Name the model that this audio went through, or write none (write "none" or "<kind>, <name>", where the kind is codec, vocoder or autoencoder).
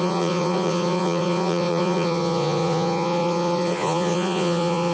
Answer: vocoder, Vocos